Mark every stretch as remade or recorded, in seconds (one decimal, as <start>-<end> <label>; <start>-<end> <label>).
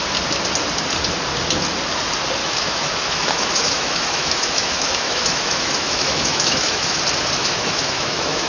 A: 0.0-2.4 recorded; 2.4-7.0 remade; 7.0-7.4 recorded; 7.4-8.5 remade